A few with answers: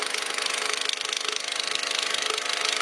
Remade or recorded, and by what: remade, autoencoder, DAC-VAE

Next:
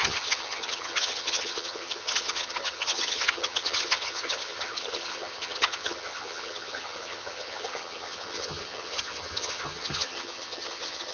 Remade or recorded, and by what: remade, vocoder, HiFi-GAN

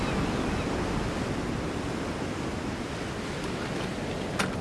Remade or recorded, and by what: recorded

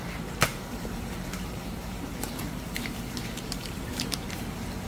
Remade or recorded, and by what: remade, vocoder, BigVGAN v2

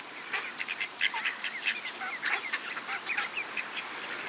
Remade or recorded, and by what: remade, vocoder, BigVGAN v2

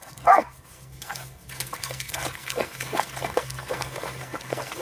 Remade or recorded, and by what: remade, codec, SNAC